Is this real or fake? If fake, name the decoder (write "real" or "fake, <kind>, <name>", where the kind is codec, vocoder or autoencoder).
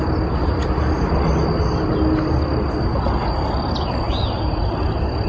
real